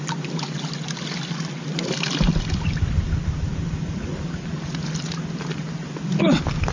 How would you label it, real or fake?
real